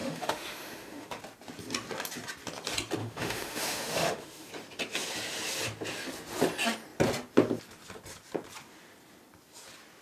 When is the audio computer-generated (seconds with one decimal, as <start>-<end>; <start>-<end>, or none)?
0.0-1.2; 3.0-4.5